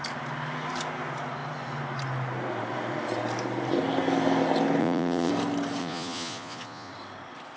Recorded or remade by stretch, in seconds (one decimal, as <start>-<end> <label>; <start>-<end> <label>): 0.0-4.8 recorded; 4.8-5.3 remade; 5.3-5.8 recorded; 5.8-6.9 remade; 6.9-7.6 recorded